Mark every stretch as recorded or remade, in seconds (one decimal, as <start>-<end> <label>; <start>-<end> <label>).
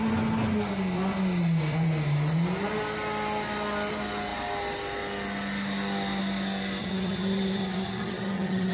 0.0-6.8 recorded; 6.8-8.7 remade